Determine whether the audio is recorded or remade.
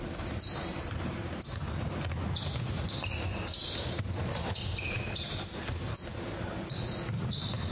remade